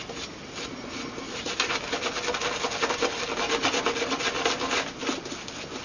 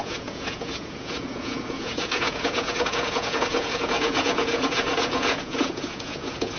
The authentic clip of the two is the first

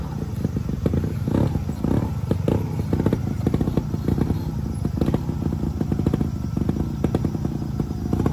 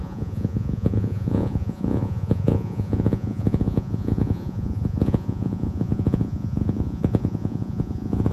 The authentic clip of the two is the first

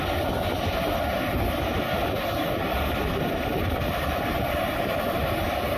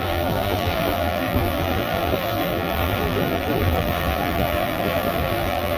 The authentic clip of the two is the first